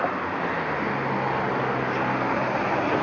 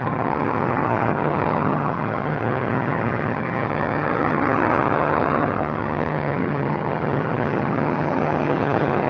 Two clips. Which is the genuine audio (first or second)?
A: first